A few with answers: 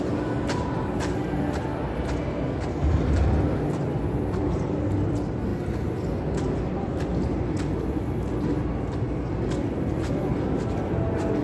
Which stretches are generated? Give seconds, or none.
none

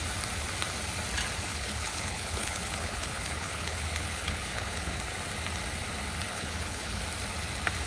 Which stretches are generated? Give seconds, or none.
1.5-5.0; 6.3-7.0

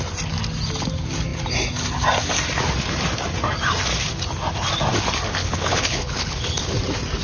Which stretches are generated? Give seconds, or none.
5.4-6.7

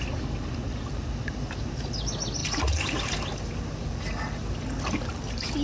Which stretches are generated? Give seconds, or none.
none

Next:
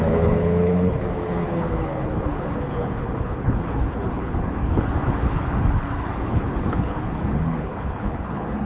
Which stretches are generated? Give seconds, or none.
0.0-8.6

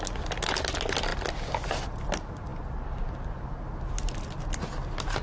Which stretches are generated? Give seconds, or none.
none

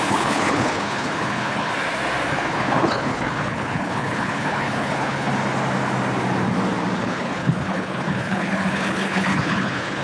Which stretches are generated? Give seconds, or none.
0.0-1.7; 2.3-5.3; 7.0-10.0

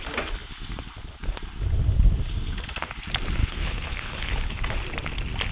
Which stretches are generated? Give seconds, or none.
3.4-4.6